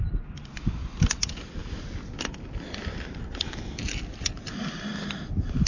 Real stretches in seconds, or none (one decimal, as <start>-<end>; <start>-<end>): 0.0-5.7